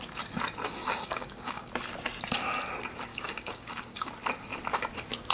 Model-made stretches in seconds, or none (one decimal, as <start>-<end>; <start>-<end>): 0.8-1.7; 3.1-4.1